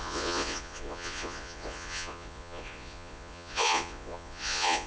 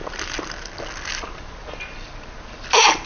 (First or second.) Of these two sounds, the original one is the second